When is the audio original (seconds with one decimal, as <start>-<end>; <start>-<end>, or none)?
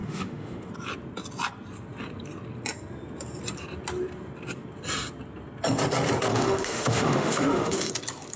0.7-6.3; 7.9-8.4